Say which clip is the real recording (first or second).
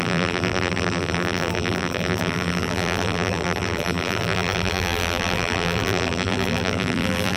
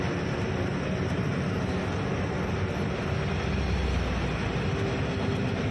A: second